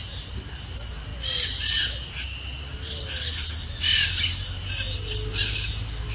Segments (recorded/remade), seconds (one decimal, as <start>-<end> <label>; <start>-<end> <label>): 0.0-6.1 recorded